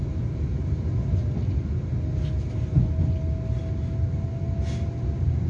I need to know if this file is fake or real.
real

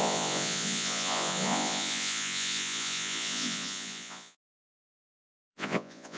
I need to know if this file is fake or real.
fake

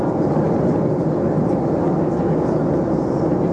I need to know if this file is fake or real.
real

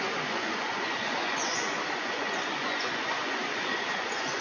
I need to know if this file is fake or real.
fake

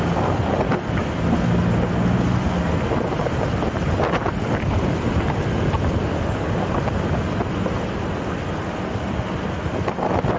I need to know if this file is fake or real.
real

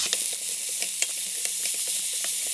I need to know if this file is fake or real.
real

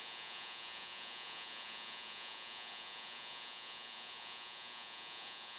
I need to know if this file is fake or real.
fake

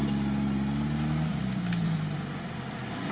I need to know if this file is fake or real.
real